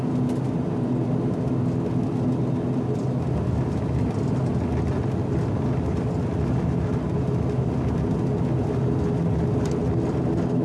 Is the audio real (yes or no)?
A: yes